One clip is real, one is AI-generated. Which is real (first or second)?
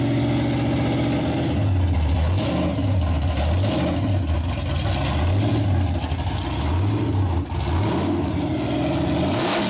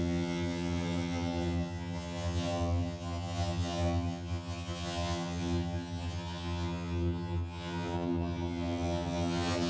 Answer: first